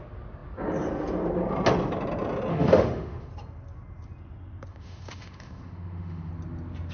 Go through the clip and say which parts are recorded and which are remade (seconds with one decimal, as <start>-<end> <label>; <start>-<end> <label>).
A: 0.0-2.5 recorded; 2.5-3.3 remade; 3.3-4.7 recorded; 4.7-6.3 remade; 6.3-6.9 recorded